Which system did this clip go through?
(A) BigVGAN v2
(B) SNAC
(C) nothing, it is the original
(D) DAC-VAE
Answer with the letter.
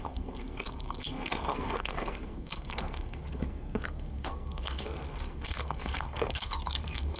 B